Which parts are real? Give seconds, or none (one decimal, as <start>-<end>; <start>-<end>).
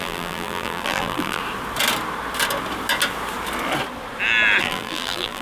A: 1.4-4.6